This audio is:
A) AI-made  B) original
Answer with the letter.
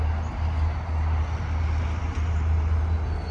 B